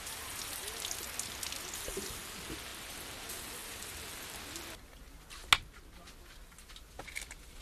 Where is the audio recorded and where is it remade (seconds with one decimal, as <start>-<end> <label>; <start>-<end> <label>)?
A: 0.0-7.6 recorded